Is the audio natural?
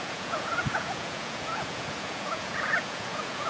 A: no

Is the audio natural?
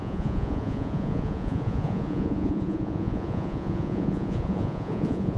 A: no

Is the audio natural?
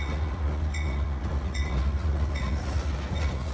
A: no